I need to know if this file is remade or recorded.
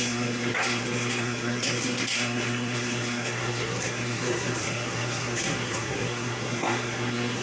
remade